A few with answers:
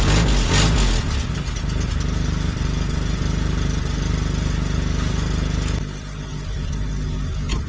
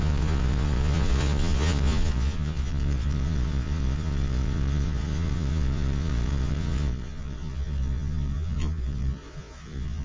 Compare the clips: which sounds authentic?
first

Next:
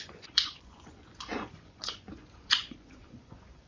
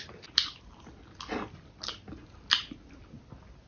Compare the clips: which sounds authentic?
second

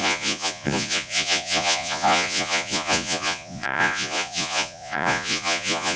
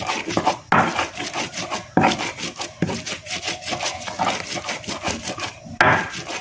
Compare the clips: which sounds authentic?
second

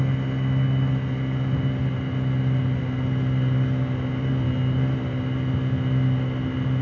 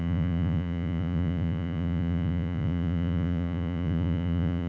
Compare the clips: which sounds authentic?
first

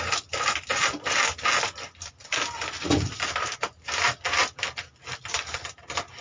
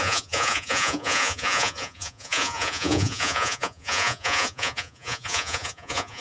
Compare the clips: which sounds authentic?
first